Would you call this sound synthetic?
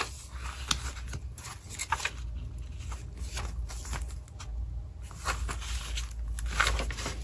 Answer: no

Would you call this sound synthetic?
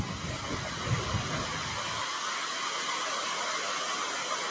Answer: no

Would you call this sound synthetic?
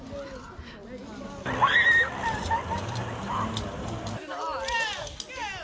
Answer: no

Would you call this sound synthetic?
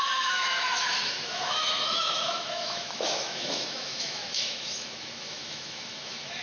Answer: yes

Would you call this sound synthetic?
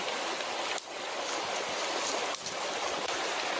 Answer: no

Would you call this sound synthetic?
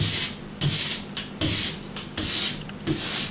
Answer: no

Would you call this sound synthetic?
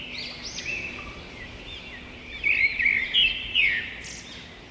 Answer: no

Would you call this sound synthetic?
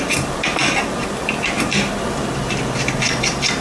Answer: yes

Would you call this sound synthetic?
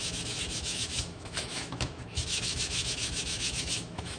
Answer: yes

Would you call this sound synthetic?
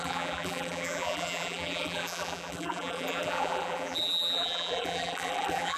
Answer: yes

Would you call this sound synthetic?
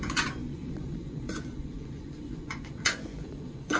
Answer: yes